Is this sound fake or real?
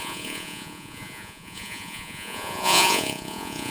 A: fake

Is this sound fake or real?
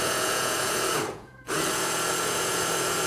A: fake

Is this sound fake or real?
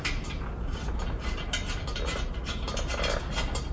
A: real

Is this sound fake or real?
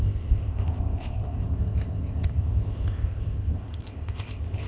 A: fake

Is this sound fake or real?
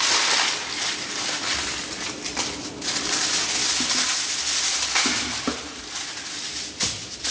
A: real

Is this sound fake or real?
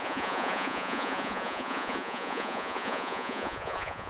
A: fake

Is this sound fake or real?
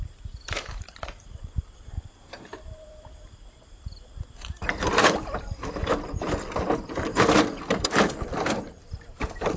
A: fake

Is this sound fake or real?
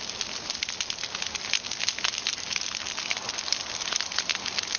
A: real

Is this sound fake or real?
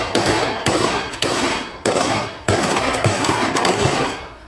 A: fake